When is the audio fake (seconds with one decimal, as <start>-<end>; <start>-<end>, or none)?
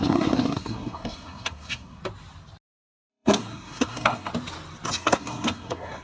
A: 0.0-2.0; 3.1-4.3; 4.9-6.0